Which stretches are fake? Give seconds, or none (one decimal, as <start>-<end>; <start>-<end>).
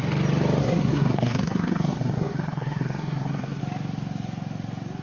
0.6-3.6